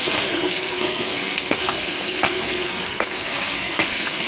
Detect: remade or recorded remade